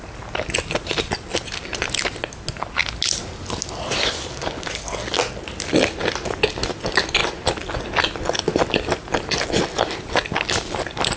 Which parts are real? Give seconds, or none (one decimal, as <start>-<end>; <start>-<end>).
0.0-11.2